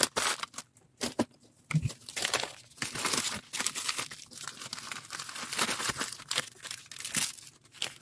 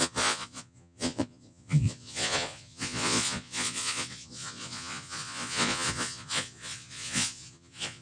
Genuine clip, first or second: first